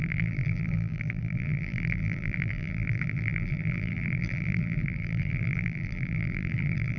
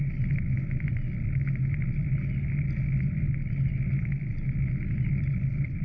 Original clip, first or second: second